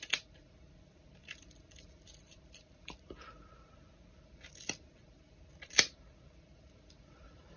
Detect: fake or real fake